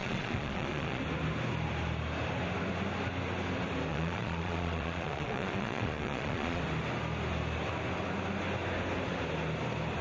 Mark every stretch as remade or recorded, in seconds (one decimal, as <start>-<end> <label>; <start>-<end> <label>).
0.0-1.0 remade; 1.0-3.9 recorded; 3.9-6.6 remade; 6.6-10.0 recorded